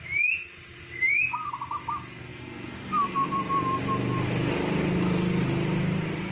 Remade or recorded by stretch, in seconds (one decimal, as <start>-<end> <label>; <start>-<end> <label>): 0.0-2.3 recorded; 2.3-3.3 remade; 3.3-6.3 recorded